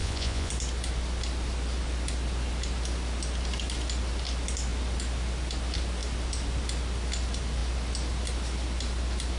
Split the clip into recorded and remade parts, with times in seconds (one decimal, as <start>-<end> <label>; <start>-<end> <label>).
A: 0.0-0.5 remade; 0.5-9.4 recorded